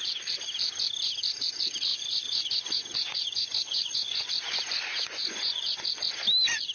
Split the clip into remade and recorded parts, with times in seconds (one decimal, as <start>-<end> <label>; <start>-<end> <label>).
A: 0.0-1.9 recorded; 1.9-4.3 remade; 4.3-4.9 recorded; 4.9-5.8 remade; 5.8-6.7 recorded